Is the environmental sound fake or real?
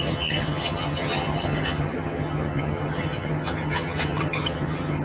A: fake